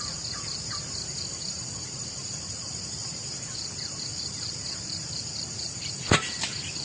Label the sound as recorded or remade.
remade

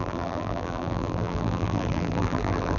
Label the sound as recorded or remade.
remade